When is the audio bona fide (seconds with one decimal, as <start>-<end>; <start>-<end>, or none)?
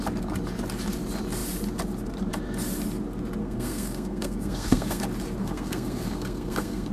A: 0.0-3.4; 5.0-5.4